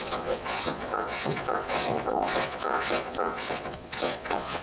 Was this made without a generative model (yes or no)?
no